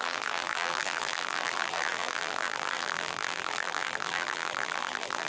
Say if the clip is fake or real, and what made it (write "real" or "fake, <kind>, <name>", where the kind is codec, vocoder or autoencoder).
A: fake, vocoder, BigVGAN v2